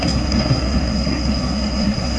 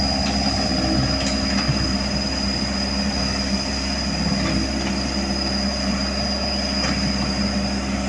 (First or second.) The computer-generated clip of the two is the first